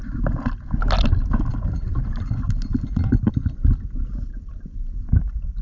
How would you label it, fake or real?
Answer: real